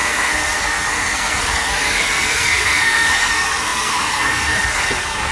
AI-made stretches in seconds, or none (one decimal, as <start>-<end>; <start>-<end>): 0.0-5.3